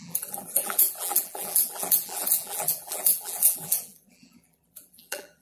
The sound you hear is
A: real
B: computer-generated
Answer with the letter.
B